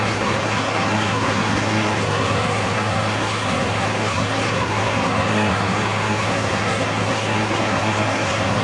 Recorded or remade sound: remade